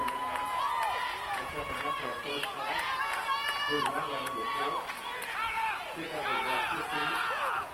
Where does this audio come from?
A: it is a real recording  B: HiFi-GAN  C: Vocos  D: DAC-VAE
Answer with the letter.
C